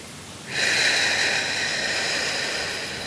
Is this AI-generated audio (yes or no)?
no